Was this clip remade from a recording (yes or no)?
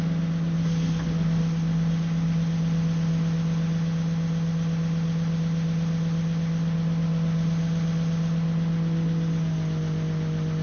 no